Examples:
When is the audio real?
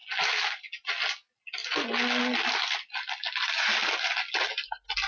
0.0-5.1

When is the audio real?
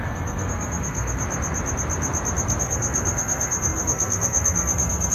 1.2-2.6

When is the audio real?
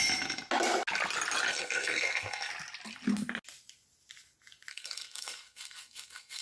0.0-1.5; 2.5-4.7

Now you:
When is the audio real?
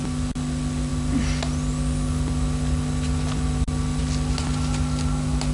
0.0-5.5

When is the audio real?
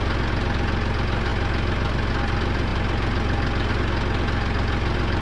0.0-5.2